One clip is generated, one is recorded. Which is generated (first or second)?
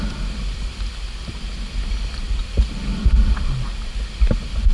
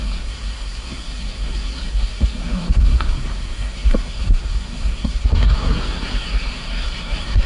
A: second